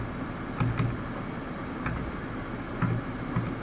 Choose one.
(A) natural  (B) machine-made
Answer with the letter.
A